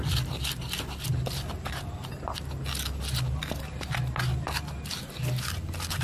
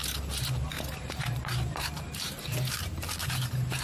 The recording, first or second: first